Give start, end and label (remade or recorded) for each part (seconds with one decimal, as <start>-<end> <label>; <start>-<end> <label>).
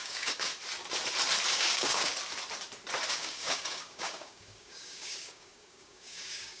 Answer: 0.0-0.5 remade; 0.5-1.5 recorded; 1.5-2.1 remade; 2.1-3.1 recorded; 3.1-6.6 remade